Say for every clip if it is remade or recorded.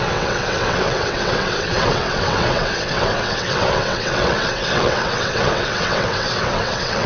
remade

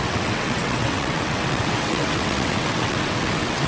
remade